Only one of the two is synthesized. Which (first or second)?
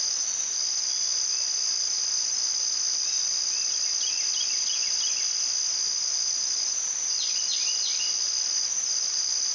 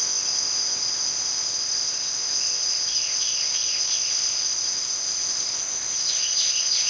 second